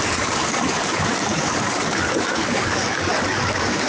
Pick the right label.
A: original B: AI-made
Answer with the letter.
B